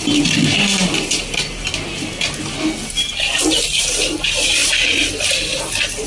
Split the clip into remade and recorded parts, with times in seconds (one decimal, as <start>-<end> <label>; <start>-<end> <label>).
0.0-6.1 recorded